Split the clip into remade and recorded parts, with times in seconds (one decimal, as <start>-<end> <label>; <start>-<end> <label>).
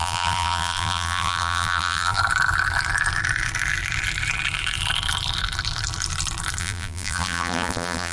0.0-2.2 remade; 2.2-6.6 recorded; 6.6-8.1 remade